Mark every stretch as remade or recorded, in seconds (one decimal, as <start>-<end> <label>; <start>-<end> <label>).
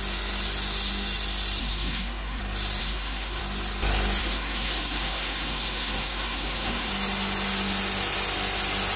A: 0.0-1.6 recorded; 1.6-2.4 remade; 2.4-2.8 recorded; 2.8-3.4 remade; 3.4-4.2 recorded; 4.2-6.9 remade; 6.9-9.0 recorded